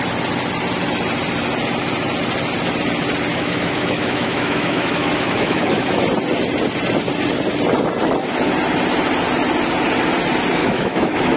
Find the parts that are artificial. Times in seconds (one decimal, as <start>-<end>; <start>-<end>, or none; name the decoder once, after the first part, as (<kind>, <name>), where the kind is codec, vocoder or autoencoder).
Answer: 3.3-6.0 (autoencoder, DAC-VAE); 10.6-11.4